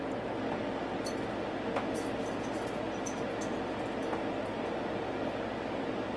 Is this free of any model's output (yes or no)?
yes